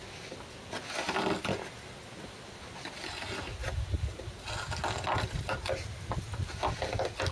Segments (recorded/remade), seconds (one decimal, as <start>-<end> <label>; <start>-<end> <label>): 0.0-3.6 recorded; 3.6-4.2 remade; 4.2-7.3 recorded